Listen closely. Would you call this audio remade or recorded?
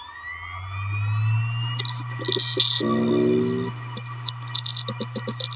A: recorded